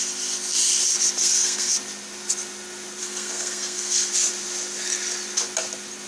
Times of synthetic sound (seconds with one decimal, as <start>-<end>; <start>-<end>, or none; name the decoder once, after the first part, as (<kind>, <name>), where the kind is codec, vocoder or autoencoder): 1.2-1.7 (codec, SNAC); 3.0-4.1